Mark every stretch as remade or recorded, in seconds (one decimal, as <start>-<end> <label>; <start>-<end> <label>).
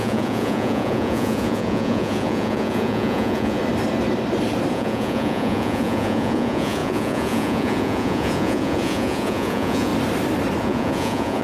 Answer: 0.0-3.6 remade; 3.6-4.7 recorded; 4.7-9.9 remade; 9.9-10.6 recorded; 10.6-11.4 remade